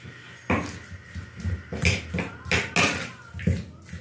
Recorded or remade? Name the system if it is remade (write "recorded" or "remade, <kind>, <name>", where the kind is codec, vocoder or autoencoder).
recorded